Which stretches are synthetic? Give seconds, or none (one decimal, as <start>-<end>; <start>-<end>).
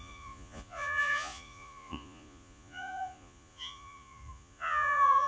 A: 0.0-5.3